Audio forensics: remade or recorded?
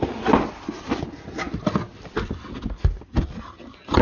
recorded